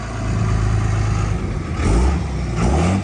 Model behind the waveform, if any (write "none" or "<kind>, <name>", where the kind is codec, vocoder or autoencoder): none